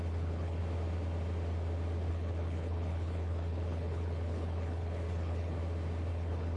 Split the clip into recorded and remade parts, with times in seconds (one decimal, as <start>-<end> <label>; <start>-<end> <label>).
0.0-0.6 remade; 0.6-2.1 recorded; 2.1-5.6 remade; 5.6-6.1 recorded; 6.1-6.6 remade